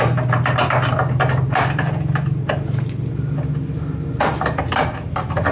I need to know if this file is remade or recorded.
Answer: recorded